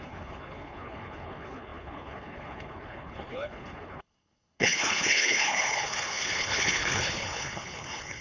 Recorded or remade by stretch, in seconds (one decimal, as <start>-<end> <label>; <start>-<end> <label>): 0.0-8.2 remade